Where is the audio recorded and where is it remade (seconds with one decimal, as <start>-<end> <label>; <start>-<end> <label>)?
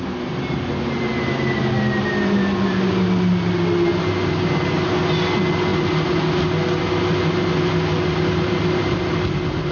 0.0-9.7 recorded